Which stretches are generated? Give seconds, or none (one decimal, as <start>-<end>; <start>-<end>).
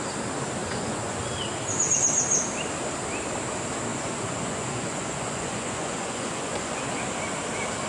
0.6-1.2; 3.9-6.8